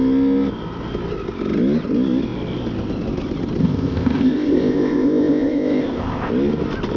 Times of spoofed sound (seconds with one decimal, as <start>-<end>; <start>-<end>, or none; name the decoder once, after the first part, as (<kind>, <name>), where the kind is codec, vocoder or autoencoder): 3.6-6.3 (codec, ZipCodec)